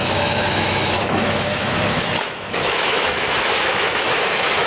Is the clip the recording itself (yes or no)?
no